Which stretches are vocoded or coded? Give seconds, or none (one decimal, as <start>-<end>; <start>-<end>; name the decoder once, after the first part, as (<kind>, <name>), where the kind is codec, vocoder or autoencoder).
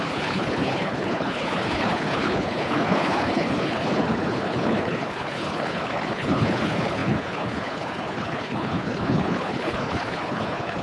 0.0-10.8 (codec, HILCodec)